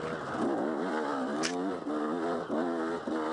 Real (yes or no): yes